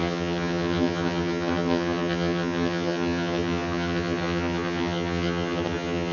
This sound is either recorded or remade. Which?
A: remade